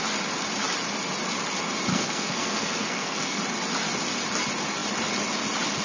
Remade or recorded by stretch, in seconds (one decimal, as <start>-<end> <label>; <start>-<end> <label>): 0.0-1.9 recorded; 1.9-3.4 remade; 3.4-5.8 recorded

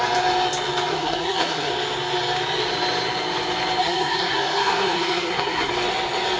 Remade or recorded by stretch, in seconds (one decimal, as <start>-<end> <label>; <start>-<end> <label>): 0.0-0.9 recorded; 0.9-1.7 remade; 1.7-3.8 recorded; 3.8-5.7 remade; 5.7-6.4 recorded

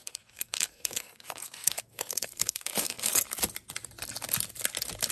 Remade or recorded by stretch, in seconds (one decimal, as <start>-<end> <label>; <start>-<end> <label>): 0.0-3.1 remade; 3.1-5.1 recorded

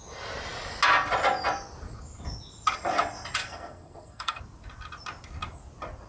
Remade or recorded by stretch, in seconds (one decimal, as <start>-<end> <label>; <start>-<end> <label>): 0.0-3.4 recorded; 3.4-4.4 remade; 4.4-6.1 recorded

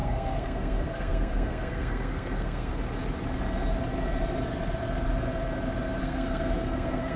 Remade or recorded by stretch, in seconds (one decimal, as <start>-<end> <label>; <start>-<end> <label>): 0.0-2.7 remade; 2.7-6.0 recorded; 6.0-7.2 remade

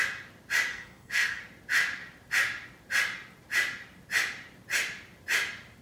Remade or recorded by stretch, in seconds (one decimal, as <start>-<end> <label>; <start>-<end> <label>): 0.0-0.7 recorded; 0.7-1.4 remade; 1.4-5.8 recorded

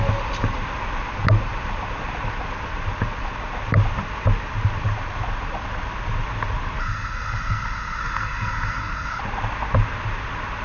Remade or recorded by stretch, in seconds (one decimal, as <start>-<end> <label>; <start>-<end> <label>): 0.0-6.8 recorded; 6.8-9.2 remade; 9.2-10.6 recorded